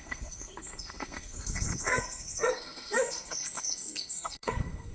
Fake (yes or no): yes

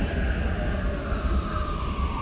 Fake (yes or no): no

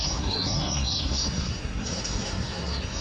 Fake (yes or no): yes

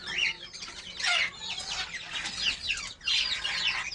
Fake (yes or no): no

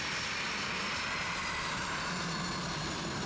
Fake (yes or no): no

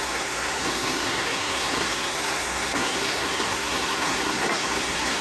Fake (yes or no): yes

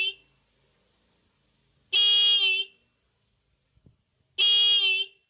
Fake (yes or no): no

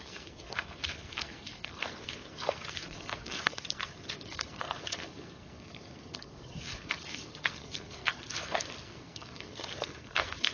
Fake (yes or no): yes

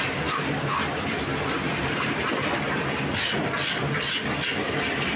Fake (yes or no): no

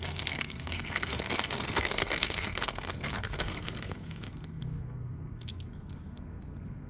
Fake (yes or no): yes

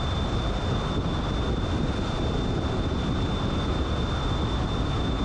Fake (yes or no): no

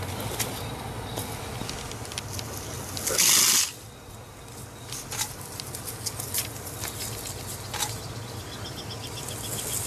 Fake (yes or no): no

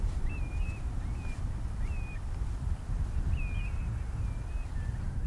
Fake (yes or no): no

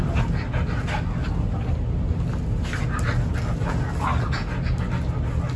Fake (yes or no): no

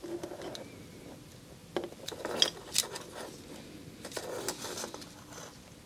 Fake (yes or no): no